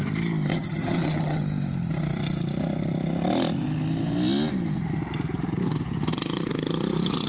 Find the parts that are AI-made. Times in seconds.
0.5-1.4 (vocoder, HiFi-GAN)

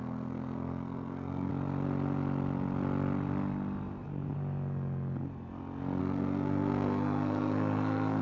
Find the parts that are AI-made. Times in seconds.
0.0-1.5 (codec, SNAC); 6.0-8.2

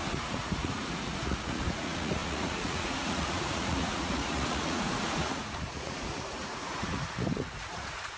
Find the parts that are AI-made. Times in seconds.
0.0-8.2 (vocoder, Vocos)

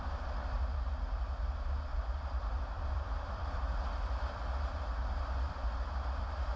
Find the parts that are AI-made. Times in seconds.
1.9-5.9 (vocoder, BigVGAN v2)

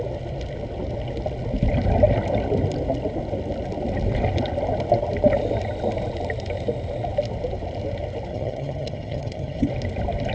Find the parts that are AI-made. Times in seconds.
8.3-9.7 (vocoder, HiFi-GAN)

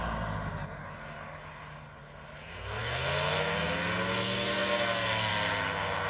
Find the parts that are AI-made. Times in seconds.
0.8-1.5 (codec, DAC)